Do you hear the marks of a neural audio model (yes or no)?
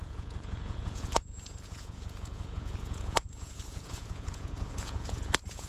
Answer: yes